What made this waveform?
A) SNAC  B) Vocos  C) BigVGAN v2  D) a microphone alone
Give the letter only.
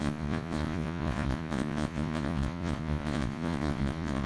B